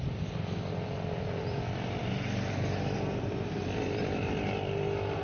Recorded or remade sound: recorded